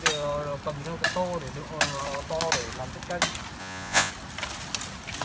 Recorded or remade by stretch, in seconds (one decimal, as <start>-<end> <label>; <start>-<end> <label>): 0.0-3.6 recorded; 3.6-4.1 remade; 4.1-5.2 recorded